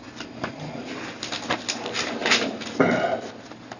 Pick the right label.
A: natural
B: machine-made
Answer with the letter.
A